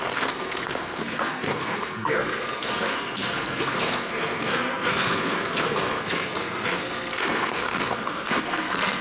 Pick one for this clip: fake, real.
fake